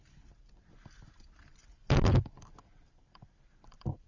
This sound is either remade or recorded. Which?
remade